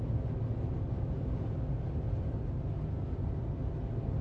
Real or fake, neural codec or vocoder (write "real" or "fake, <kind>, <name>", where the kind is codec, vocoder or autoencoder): real